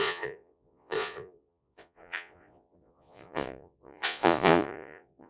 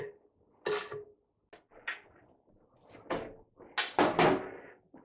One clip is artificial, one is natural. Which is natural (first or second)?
second